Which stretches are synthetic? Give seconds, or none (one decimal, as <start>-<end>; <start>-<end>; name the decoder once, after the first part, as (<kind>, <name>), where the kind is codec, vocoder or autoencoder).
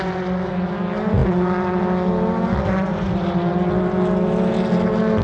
none